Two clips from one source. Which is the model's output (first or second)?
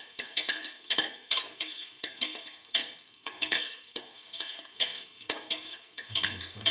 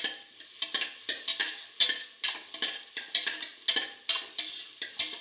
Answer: first